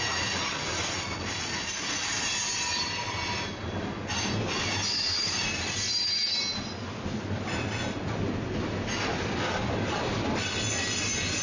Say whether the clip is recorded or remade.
recorded